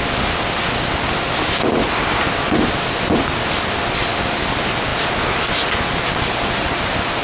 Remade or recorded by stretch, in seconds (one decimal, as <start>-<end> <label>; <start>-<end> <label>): 0.0-7.2 recorded